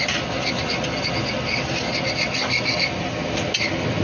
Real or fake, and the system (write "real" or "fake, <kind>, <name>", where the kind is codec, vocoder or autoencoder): real